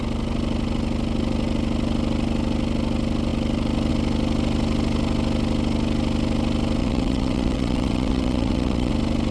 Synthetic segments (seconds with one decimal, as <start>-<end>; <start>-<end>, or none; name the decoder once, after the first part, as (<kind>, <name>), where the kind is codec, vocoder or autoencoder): 6.8-8.9 (vocoder, WaveNeXt)